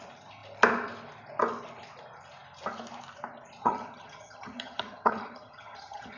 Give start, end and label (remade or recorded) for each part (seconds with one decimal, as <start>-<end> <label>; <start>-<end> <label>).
0.0-3.6 recorded; 3.6-6.2 remade